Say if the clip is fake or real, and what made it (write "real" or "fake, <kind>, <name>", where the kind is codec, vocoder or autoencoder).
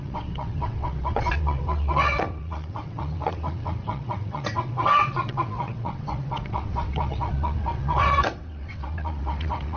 fake, vocoder, WaveNeXt